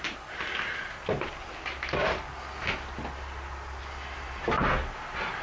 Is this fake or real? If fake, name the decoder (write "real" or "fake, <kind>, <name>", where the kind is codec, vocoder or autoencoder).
real